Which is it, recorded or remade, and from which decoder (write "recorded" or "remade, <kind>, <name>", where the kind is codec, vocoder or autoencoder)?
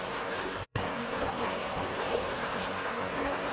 remade, codec, SNAC